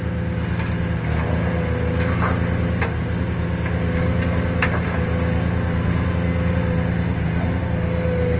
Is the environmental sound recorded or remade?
recorded